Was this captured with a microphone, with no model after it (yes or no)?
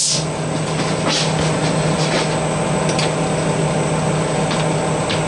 yes